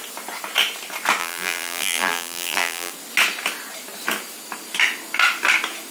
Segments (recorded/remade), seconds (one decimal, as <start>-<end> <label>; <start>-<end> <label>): 0.0-1.2 recorded; 1.2-2.9 remade; 2.9-5.9 recorded